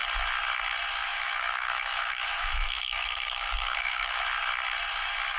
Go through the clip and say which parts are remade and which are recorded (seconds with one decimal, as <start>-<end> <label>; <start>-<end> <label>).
0.0-1.0 recorded; 1.0-4.2 remade; 4.2-5.4 recorded